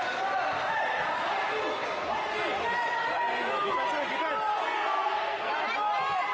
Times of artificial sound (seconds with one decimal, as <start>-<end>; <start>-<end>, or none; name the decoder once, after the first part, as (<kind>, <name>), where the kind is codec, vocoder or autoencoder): 4.5-5.5 (codec, SNAC)